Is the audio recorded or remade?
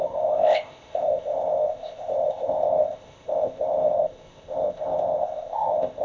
remade